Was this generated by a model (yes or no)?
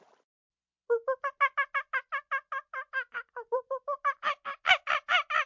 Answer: no